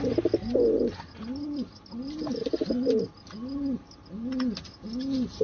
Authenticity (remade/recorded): recorded